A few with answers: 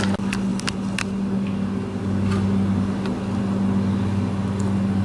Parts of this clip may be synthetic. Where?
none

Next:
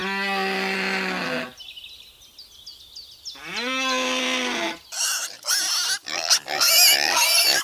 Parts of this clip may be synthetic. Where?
none

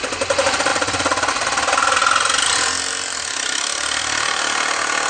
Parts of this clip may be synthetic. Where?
none

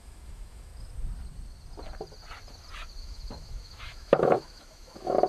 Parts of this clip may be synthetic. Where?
0.0-0.7 (autoencoder, DAC-VAE); 3.0-5.3

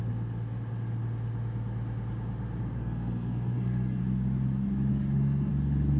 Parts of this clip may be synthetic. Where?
2.6-4.0 (codec, SNAC); 4.9-5.5

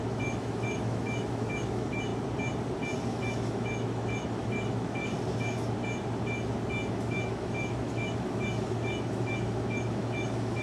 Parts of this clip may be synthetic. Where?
0.0-2.1 (autoencoder, DAC-VAE); 3.1-5.0; 6.9-10.6

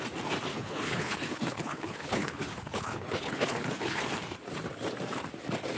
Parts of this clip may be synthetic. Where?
0.5-4.0 (codec, HILCodec)

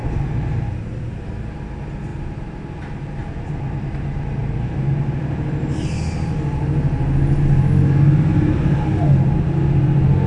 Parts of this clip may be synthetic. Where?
2.1-2.8 (vocoder, BigVGAN v2); 3.2-3.8